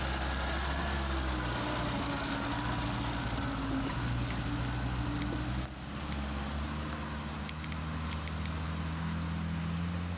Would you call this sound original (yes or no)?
yes